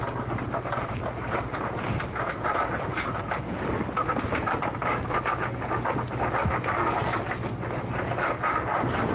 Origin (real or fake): real